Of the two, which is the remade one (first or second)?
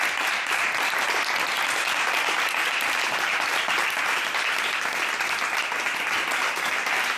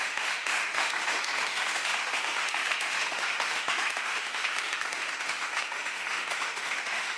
second